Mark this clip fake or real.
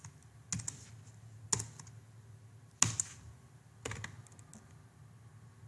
real